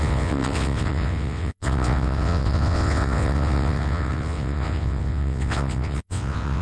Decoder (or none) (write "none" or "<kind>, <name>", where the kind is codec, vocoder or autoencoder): vocoder, WaveNeXt